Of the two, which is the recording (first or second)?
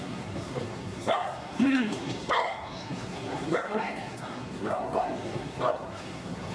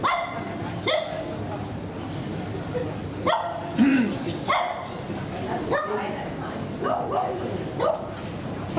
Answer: second